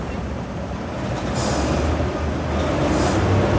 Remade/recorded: recorded